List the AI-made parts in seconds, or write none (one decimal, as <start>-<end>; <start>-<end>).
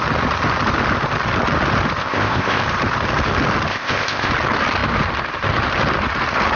2.0-2.6; 3.7-4.3